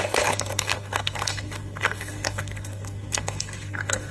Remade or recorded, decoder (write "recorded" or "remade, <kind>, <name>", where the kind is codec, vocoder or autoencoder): remade, codec, SNAC